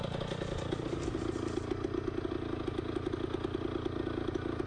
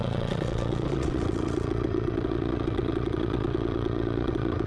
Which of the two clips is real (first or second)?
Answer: first